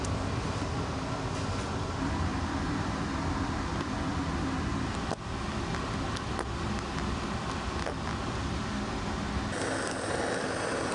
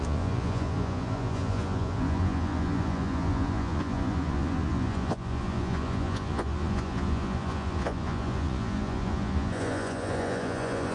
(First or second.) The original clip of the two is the first